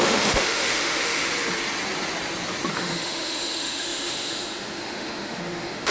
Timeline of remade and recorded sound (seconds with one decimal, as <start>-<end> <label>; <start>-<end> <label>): 0.0-1.2 remade; 1.2-2.7 recorded; 2.7-5.9 remade